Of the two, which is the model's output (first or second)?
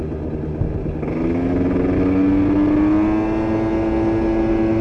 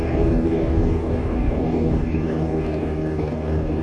second